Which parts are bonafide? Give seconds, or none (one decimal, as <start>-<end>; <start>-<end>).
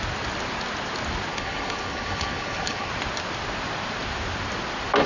0.0-1.3; 2.9-5.1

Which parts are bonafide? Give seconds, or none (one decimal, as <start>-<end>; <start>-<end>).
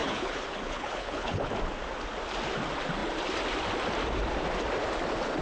1.5-5.4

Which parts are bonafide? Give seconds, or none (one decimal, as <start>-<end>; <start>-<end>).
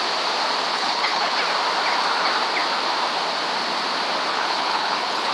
0.0-0.7; 1.3-4.3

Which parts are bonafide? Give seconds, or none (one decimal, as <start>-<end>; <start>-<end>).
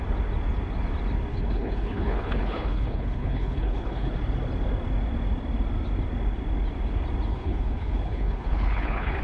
0.0-1.3; 4.1-7.3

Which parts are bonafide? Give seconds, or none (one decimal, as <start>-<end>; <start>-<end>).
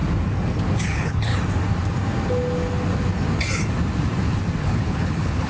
0.0-0.8; 1.3-4.6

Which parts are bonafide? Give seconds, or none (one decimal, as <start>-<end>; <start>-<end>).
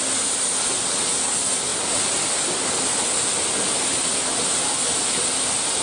0.0-5.8